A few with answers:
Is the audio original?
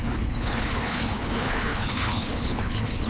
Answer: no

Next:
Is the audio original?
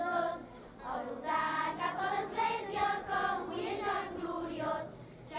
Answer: yes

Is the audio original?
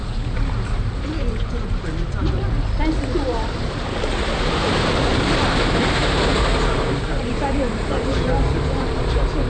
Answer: no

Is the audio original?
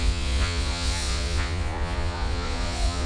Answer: no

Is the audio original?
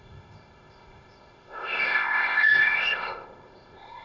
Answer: no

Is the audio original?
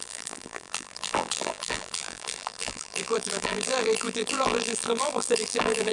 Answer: no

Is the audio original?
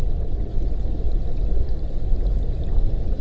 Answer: yes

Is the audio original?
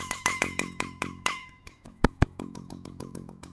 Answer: no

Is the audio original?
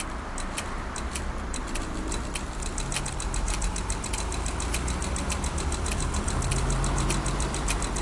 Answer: no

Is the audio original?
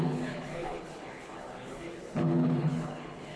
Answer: no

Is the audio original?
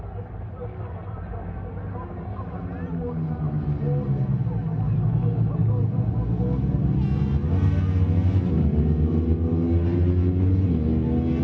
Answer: yes